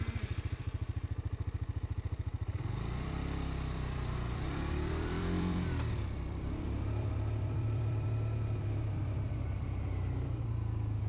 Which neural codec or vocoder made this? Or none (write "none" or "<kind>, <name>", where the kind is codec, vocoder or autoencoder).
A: vocoder, BigVGAN v2